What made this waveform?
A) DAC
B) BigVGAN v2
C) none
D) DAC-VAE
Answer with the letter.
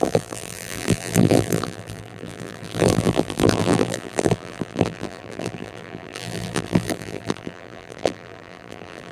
B